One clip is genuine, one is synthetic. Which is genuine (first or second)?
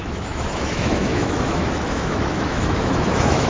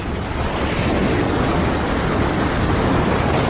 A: second